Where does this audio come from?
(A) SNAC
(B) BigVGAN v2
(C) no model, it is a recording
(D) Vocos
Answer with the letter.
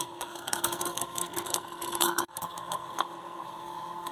A